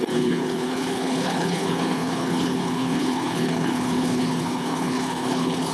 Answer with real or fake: fake